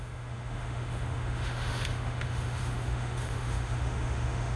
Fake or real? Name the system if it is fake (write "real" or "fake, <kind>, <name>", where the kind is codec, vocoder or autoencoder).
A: fake, autoencoder, DAC-VAE